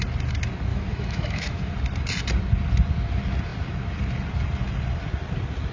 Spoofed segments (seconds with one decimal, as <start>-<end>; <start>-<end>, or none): 0.7-1.7